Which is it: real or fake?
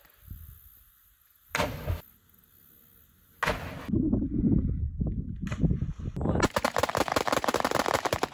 real